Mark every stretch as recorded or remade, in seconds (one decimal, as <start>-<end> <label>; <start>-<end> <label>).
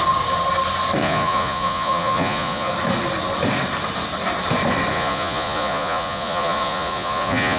0.0-1.0 recorded; 1.0-2.7 remade; 2.7-4.9 recorded; 4.9-7.6 remade